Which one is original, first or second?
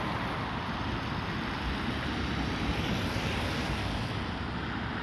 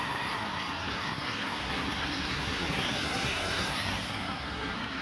first